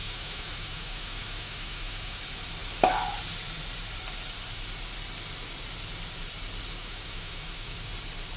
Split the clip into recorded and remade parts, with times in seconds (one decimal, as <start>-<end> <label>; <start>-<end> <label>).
0.0-2.2 remade; 2.2-6.8 recorded; 6.8-7.9 remade; 7.9-8.4 recorded